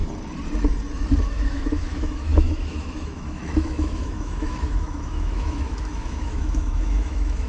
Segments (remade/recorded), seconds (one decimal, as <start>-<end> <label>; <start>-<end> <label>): 0.0-1.2 recorded; 1.2-7.5 remade